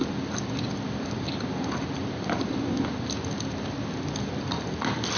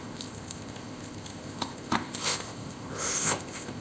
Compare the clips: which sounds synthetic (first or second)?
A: second